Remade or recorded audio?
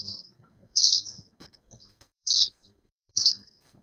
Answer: remade